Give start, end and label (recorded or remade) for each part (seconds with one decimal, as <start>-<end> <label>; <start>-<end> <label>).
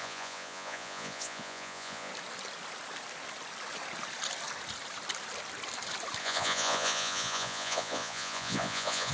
0.0-2.1 remade; 2.1-6.2 recorded; 6.2-9.1 remade